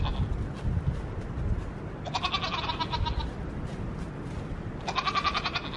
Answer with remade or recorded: recorded